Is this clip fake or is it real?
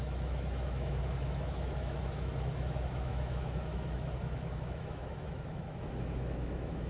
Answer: fake